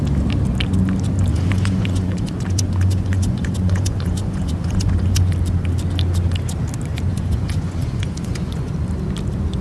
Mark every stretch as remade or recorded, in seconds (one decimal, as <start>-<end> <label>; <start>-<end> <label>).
0.0-1.3 recorded; 1.3-5.3 remade; 5.3-7.1 recorded; 7.1-8.7 remade; 8.7-9.6 recorded